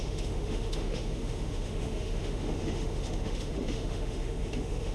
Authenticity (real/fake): fake